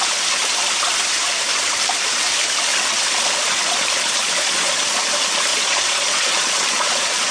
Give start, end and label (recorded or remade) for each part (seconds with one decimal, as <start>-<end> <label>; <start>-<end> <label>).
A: 0.0-4.2 recorded; 4.2-4.8 remade; 4.8-5.5 recorded; 5.5-7.3 remade